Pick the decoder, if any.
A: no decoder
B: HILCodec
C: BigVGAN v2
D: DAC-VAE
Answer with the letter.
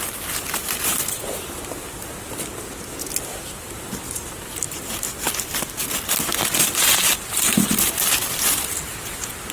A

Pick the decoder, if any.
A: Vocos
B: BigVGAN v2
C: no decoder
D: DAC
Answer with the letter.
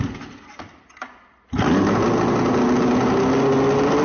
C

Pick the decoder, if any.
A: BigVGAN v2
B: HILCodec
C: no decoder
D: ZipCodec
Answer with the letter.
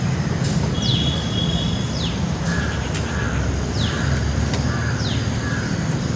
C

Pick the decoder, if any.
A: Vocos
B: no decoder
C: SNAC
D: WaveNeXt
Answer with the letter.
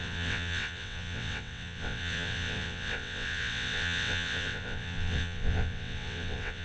D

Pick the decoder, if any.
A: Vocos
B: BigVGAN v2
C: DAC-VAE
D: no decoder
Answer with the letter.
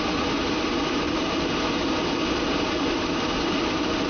D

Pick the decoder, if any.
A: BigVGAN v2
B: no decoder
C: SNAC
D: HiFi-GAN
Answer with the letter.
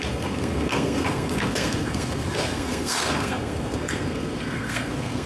C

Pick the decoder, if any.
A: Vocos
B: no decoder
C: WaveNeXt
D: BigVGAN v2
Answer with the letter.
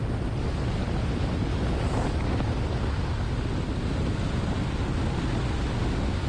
B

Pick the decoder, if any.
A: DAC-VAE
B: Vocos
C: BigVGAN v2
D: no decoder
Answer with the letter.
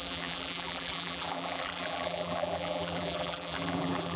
C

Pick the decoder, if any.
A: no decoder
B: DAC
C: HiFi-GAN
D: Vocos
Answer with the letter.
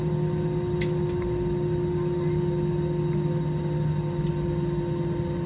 A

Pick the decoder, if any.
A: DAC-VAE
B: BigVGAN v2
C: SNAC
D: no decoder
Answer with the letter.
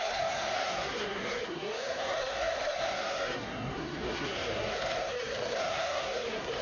C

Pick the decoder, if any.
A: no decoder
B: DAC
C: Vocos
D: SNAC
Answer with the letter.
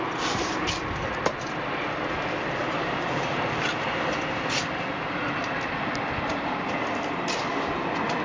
A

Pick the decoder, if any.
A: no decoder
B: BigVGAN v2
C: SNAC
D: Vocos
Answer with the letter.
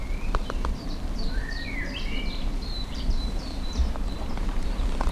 B